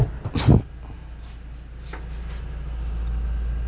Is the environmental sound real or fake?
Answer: real